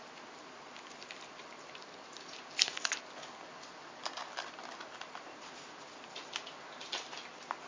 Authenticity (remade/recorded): recorded